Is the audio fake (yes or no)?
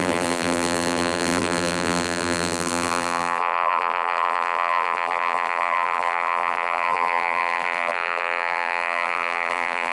yes